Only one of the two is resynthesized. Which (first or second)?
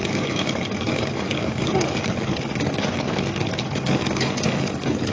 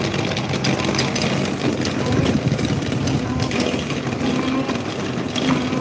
first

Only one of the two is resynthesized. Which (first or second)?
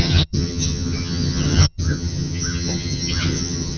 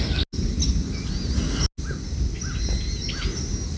first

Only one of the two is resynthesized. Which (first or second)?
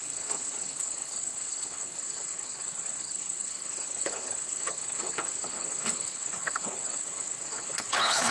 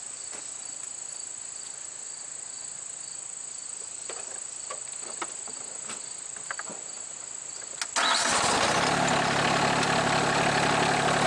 first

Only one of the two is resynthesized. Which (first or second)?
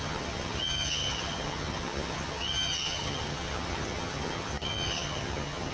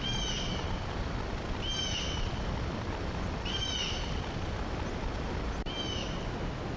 first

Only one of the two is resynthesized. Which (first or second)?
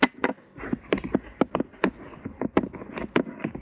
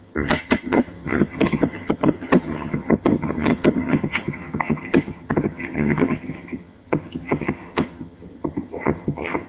second